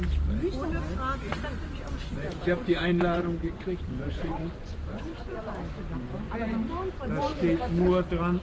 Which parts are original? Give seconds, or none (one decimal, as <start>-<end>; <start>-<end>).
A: 0.0-2.1; 5.5-8.4